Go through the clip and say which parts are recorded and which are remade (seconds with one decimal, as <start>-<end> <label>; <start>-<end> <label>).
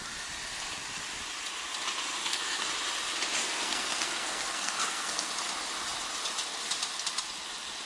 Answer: 0.0-2.2 recorded; 2.2-2.7 remade; 2.7-3.4 recorded; 3.4-5.3 remade; 5.3-7.9 recorded